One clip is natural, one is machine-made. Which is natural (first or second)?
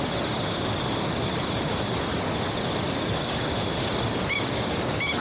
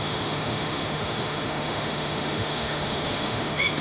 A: first